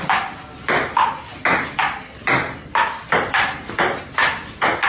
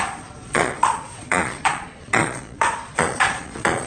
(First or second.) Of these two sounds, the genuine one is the first